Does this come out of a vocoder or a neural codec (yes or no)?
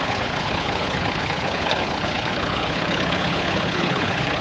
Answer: yes